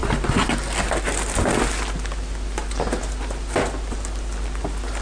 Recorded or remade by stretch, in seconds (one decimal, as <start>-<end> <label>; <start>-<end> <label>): 0.0-5.0 recorded